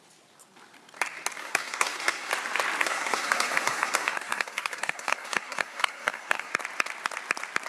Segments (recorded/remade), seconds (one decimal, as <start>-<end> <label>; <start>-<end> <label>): 0.0-1.4 recorded; 1.4-2.3 remade; 2.3-2.8 recorded; 2.8-6.5 remade; 6.5-7.7 recorded